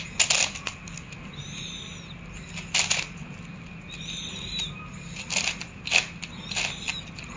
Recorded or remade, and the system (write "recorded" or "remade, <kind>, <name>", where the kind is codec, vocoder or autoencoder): recorded